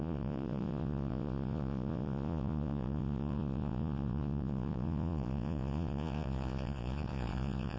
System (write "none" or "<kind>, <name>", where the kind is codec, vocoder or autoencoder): vocoder, Vocos